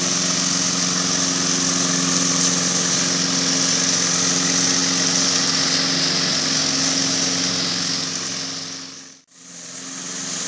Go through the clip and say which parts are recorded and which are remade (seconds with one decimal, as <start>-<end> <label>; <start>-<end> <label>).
0.0-10.5 recorded